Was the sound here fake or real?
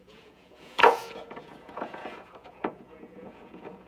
fake